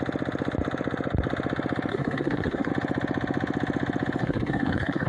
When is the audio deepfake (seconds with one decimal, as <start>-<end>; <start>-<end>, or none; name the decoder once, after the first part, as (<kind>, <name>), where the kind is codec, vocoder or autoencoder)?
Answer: 1.9-2.7 (codec, SNAC); 4.2-5.1